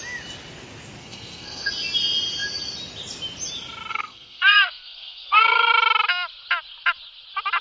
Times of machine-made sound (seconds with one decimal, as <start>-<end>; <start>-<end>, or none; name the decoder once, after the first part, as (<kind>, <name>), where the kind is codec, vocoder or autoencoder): 1.0-1.7 (codec, SNAC); 3.9-5.7